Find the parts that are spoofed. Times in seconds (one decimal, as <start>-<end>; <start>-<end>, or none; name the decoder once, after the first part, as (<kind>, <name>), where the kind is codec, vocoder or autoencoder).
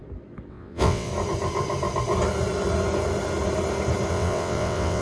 0.5-1.1 (vocoder, WaveNeXt); 4.1-5.0